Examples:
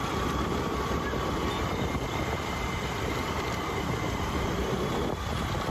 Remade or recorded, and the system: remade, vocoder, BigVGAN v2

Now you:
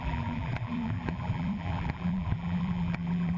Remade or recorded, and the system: remade, vocoder, BigVGAN v2